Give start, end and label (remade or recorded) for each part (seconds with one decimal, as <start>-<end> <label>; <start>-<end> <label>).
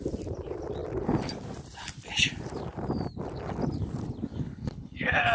0.0-4.3 recorded; 4.3-5.3 remade